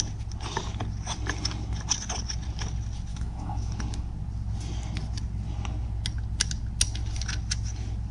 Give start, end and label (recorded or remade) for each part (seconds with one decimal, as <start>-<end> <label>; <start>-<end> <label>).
0.0-3.1 recorded; 3.1-3.7 remade; 3.7-8.1 recorded